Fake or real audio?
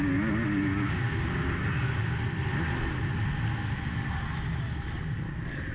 real